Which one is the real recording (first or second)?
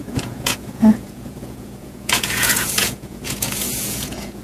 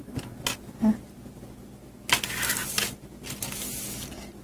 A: second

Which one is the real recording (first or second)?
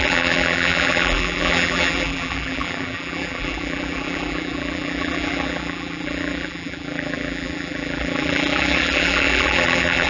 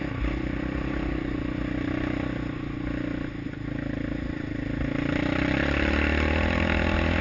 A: second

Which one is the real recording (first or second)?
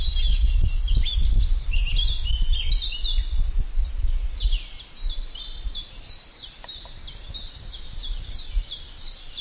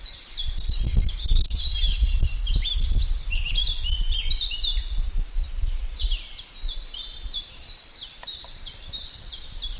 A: first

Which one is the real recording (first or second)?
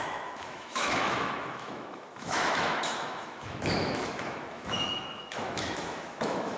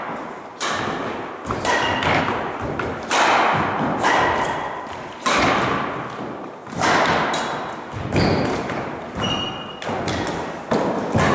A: second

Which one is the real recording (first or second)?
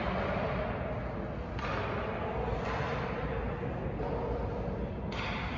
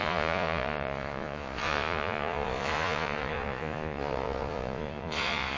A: first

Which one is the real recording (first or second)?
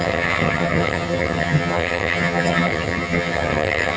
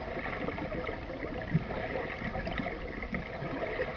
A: second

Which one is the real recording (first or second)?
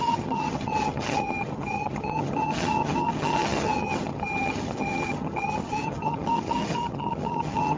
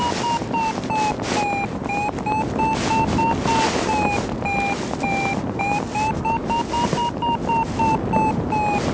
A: second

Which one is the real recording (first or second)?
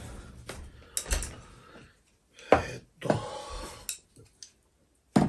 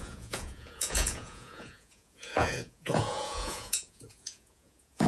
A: first